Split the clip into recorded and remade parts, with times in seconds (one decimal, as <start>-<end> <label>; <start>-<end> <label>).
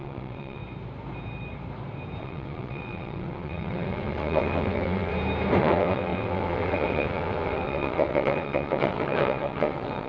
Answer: 0.0-0.6 remade; 0.6-2.2 recorded; 2.2-5.1 remade; 5.1-5.6 recorded; 5.6-10.1 remade